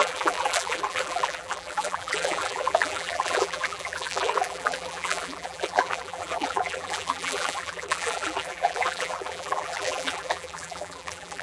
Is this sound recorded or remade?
remade